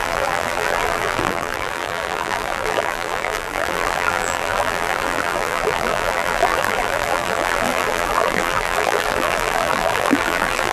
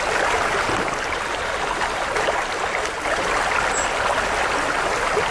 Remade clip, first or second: first